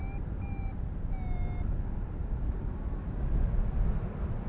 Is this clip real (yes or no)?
yes